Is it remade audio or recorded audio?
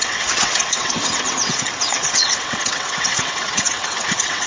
remade